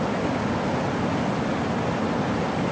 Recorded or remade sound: recorded